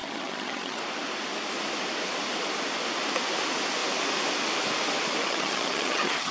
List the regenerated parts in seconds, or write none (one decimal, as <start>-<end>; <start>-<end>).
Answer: 0.0-0.8; 5.2-6.3